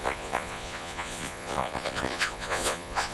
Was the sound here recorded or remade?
remade